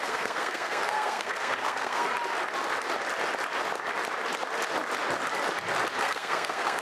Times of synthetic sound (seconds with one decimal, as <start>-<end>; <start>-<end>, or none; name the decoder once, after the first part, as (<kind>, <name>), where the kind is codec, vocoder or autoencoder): 0.0-2.1 (codec, SNAC); 6.0-6.8